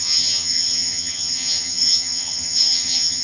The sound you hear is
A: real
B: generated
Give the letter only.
B